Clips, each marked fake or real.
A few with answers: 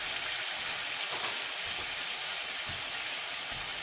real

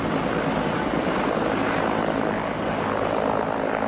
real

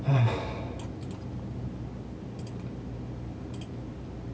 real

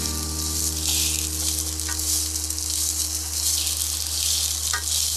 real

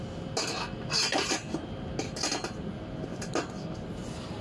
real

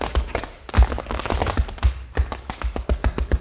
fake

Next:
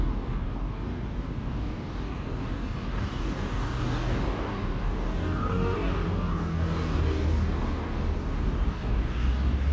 fake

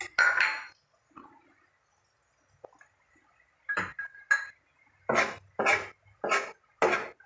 real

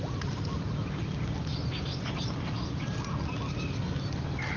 real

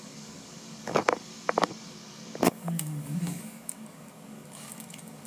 fake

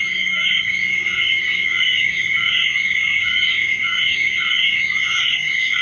fake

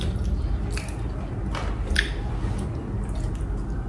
real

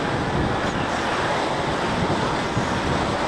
real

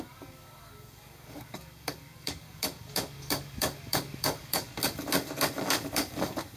fake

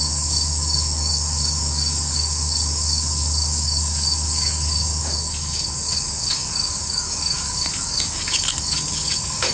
fake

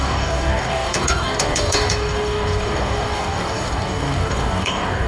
fake